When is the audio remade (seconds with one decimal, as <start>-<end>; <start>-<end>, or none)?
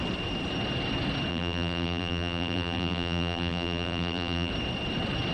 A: 1.3-4.5